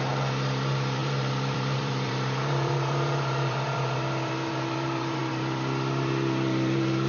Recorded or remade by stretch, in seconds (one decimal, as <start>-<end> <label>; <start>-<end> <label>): 0.0-1.0 recorded; 1.0-5.3 remade; 5.3-7.1 recorded